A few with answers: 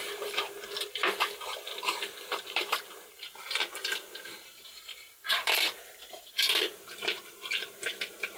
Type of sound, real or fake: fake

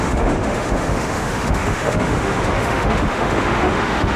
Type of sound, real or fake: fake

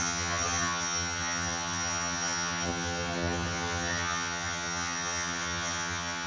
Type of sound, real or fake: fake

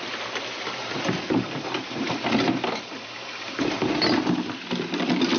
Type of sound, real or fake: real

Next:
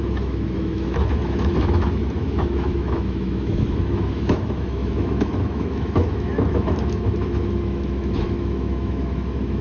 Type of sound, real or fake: fake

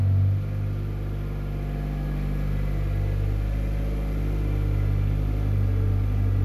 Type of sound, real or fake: real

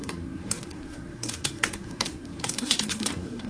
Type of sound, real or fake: fake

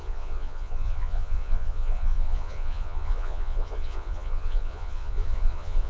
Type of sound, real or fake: fake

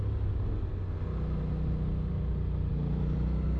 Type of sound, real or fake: real